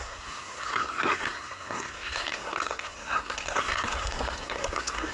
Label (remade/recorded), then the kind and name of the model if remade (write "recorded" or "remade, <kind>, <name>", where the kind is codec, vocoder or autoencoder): remade, codec, SNAC